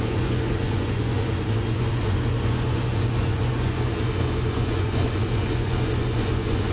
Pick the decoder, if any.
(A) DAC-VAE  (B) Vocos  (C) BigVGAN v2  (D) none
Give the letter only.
B